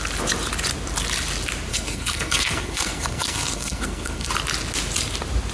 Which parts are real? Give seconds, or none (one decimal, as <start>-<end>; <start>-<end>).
0.0-1.7; 4.3-5.5